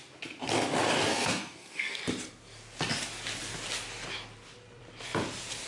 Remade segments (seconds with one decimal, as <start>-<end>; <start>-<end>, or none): 1.1-2.0